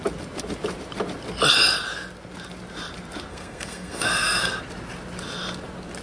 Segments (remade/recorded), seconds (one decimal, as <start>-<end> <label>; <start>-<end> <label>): 0.0-3.3 recorded; 3.3-4.6 remade; 4.6-6.0 recorded